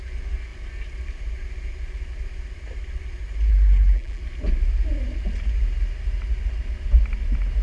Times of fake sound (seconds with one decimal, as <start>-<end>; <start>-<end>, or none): 3.5-4.2